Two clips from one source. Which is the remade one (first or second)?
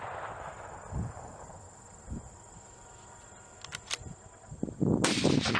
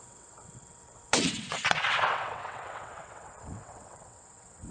second